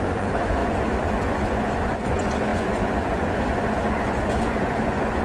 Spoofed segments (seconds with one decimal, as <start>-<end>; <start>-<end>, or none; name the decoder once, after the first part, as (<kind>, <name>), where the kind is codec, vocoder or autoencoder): 0.0-5.2 (vocoder, Vocos)